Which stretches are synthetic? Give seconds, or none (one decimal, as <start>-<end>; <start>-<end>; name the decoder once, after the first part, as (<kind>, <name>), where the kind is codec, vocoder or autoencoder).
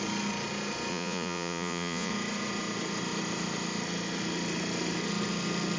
0.9-2.1 (vocoder, Vocos)